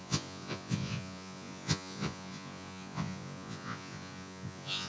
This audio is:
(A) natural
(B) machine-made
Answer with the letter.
B